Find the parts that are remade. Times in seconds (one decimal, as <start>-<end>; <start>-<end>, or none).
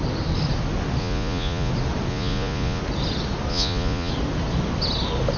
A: 1.0-1.7; 2.1-2.8; 3.5-4.1